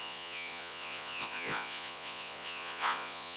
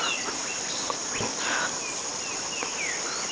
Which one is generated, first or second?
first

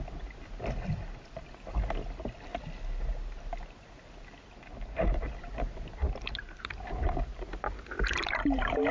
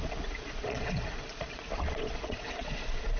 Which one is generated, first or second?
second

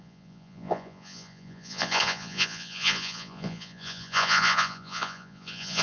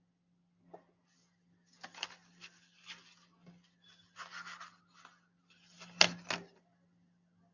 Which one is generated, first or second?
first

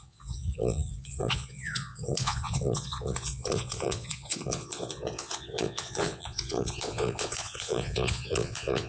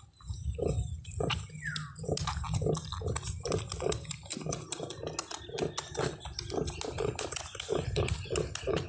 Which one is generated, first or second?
first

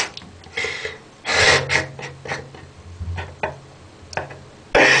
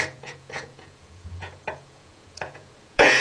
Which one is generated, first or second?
second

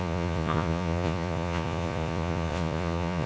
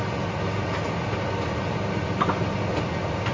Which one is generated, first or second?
first